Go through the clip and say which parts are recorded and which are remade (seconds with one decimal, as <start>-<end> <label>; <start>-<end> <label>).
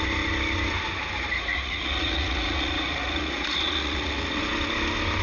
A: 0.0-1.5 recorded; 1.5-4.4 remade; 4.4-5.2 recorded